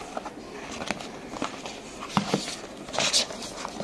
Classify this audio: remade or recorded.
recorded